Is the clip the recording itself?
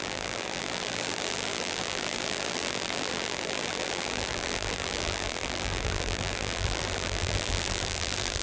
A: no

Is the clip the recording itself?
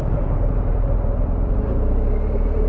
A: no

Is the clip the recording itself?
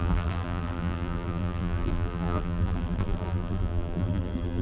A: no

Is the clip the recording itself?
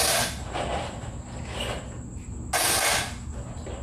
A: yes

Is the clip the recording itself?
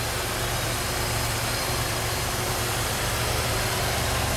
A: yes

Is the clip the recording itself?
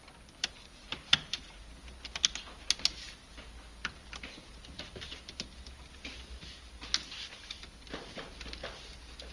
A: yes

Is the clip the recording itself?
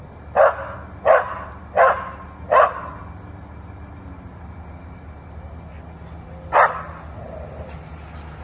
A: yes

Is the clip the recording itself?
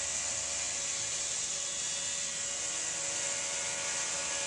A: yes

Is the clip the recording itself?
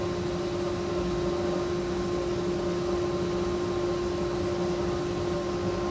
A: yes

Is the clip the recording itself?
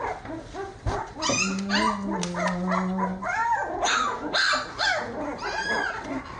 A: yes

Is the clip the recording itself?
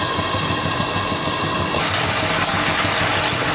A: yes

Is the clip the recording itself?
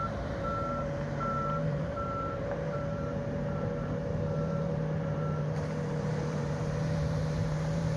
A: no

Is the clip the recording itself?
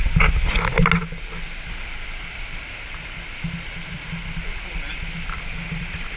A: yes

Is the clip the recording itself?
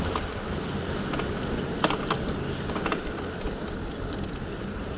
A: yes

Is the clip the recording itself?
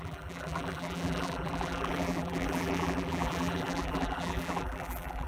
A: no